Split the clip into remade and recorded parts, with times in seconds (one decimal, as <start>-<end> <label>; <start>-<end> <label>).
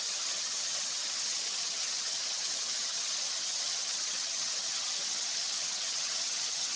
0.0-6.8 remade